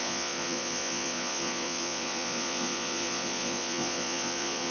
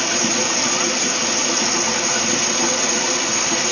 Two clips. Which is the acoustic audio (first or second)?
second